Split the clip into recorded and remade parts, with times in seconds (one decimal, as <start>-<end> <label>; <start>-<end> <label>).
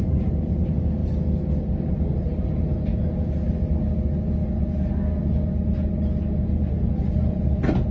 0.0-7.9 recorded